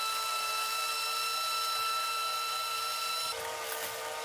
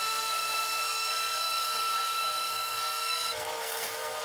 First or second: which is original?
first